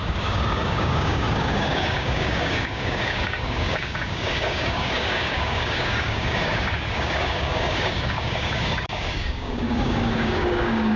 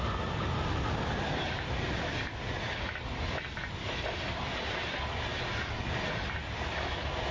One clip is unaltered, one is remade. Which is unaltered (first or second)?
second